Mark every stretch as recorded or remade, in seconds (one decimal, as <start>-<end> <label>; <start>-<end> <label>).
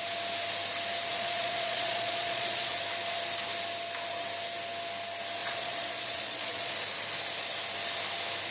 0.0-1.1 recorded; 1.1-2.8 remade; 2.8-5.4 recorded; 5.4-6.7 remade; 6.7-8.5 recorded